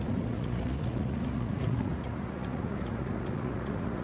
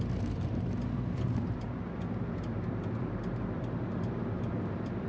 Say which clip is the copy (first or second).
first